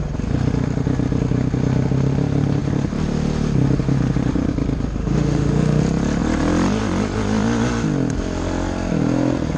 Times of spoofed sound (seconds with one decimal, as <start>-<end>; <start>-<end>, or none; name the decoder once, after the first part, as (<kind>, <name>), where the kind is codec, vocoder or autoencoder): 5.0-5.8 (autoencoder, DAC-VAE)